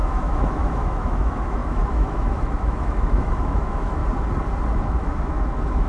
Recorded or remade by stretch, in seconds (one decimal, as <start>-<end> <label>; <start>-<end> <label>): 0.0-4.0 remade; 4.0-4.7 recorded; 4.7-5.9 remade